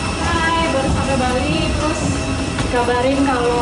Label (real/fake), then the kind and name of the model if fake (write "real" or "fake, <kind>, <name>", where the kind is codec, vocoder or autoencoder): real